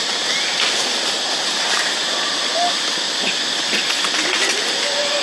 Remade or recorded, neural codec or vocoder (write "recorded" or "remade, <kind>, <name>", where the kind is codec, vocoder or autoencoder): recorded